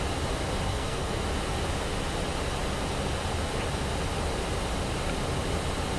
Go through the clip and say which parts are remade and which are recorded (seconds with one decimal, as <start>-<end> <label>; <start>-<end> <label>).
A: 0.0-0.7 recorded; 0.7-1.2 remade; 1.2-6.0 recorded